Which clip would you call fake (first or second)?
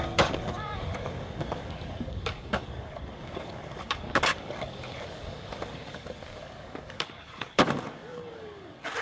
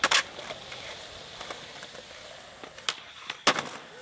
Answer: first